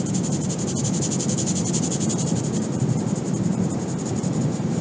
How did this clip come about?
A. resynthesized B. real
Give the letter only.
A